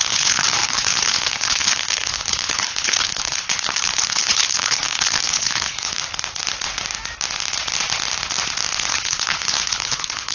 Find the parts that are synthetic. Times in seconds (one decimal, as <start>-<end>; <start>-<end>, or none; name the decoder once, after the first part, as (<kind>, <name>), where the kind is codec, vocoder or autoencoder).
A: 0.0-5.9 (codec, HILCodec); 8.9-10.3